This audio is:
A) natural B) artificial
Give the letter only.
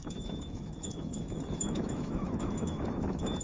B